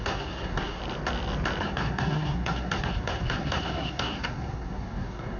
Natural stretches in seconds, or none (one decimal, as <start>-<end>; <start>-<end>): 0.8-1.6